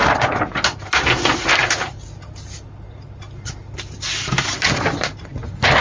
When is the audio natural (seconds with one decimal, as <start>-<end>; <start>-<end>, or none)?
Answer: 0.0-5.8